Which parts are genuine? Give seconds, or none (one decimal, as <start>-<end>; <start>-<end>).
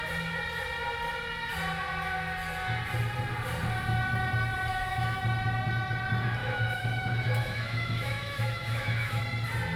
0.0-4.7; 5.2-6.4; 9.2-9.8